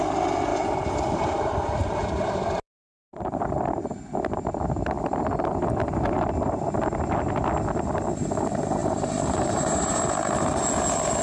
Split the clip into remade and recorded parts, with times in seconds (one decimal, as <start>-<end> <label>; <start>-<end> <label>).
0.0-0.5 recorded; 0.5-1.4 remade; 1.4-1.8 recorded; 1.8-3.7 remade; 3.7-8.8 recorded; 8.8-10.6 remade; 10.6-11.2 recorded